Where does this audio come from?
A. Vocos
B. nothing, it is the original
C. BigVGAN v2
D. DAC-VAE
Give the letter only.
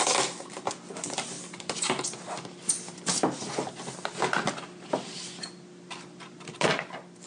B